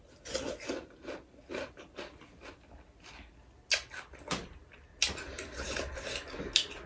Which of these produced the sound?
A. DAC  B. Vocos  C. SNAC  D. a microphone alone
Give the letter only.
D